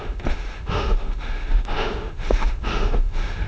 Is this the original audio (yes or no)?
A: no